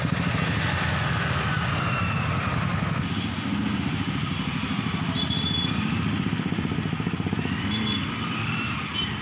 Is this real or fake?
real